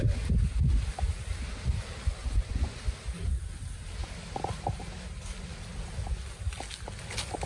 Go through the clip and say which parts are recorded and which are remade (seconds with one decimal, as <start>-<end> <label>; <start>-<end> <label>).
0.0-2.2 recorded; 2.2-2.8 remade; 2.8-7.5 recorded